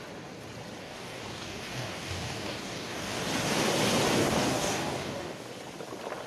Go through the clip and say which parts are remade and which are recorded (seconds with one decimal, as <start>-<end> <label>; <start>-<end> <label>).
0.0-0.8 recorded; 0.8-3.2 remade; 3.2-4.2 recorded; 4.2-5.5 remade; 5.5-6.3 recorded